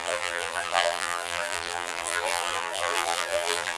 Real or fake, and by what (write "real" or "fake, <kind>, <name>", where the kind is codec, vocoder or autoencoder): fake, vocoder, BigVGAN v2